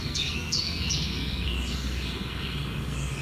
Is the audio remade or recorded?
remade